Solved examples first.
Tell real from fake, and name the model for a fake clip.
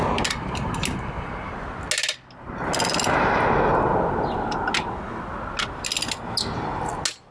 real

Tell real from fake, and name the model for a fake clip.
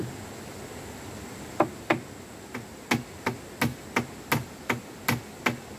real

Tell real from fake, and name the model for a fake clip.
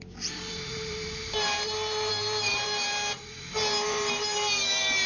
fake, vocoder, BigVGAN v2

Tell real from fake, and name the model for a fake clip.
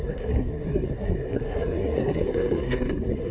fake, codec, SNAC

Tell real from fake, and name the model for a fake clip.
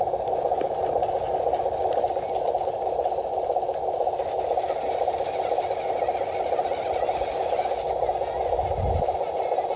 real